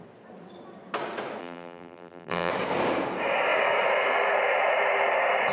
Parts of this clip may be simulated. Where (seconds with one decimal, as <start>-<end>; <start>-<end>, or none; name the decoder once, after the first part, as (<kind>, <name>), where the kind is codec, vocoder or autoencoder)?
1.4-2.5 (vocoder, BigVGAN v2)